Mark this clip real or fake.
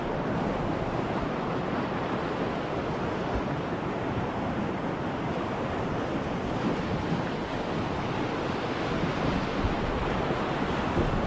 real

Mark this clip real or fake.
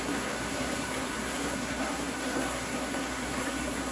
fake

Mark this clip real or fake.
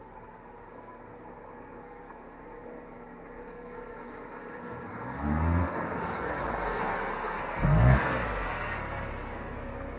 fake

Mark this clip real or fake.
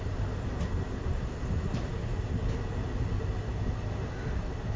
real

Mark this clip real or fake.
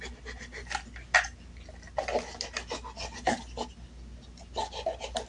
real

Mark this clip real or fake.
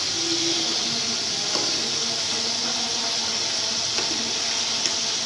real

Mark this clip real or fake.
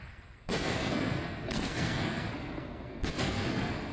fake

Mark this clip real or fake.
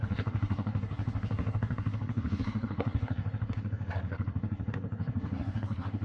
fake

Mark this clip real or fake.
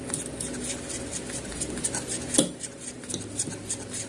real